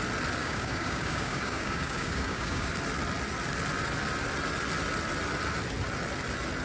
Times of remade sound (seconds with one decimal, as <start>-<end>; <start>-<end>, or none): 0.4-2.7